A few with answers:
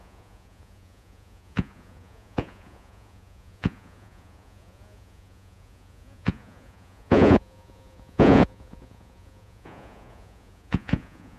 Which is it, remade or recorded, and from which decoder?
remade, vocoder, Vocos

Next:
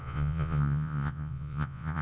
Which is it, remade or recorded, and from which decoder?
remade, vocoder, Vocos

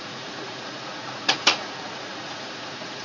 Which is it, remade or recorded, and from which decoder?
remade, vocoder, Vocos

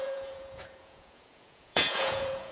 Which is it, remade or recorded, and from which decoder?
remade, vocoder, Vocos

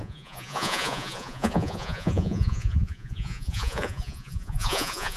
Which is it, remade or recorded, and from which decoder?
remade, vocoder, Vocos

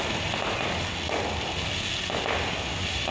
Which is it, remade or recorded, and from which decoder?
recorded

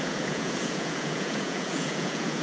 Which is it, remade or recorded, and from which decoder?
remade, vocoder, Vocos